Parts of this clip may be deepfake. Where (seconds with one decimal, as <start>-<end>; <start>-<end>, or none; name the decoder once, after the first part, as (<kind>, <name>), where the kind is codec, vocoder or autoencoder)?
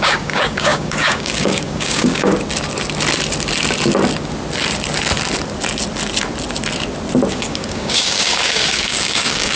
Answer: 0.0-2.3 (codec, DAC); 7.3-9.6